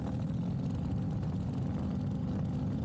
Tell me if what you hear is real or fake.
real